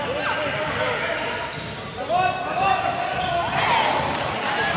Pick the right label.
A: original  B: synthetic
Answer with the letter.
A